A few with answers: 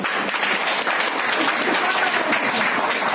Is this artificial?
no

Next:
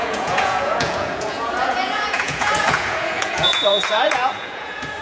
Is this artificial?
yes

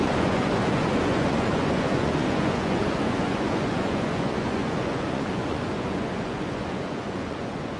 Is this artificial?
yes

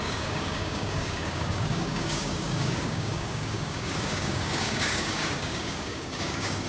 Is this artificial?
yes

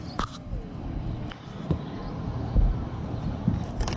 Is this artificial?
no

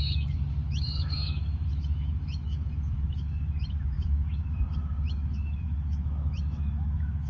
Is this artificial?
yes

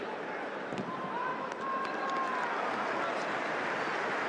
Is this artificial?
no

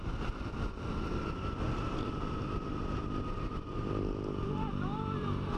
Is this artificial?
no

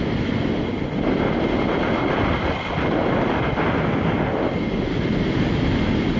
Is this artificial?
no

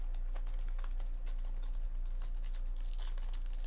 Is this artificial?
no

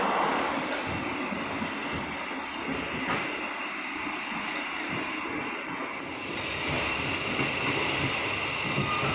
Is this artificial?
no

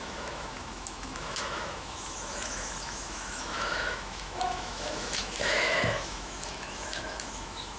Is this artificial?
yes